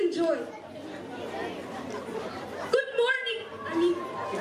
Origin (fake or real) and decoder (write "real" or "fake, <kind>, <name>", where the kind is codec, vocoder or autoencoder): real